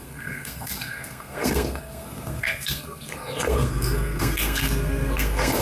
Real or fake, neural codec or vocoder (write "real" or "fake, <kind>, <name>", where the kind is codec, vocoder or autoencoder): fake, codec, SNAC